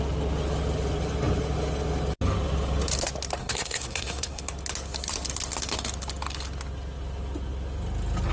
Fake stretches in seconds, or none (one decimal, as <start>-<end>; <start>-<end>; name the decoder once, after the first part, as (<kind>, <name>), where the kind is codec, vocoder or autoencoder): 3.4-4.4 (codec, SNAC)